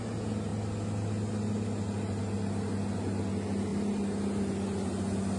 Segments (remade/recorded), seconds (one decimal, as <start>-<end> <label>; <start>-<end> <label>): 0.0-5.4 recorded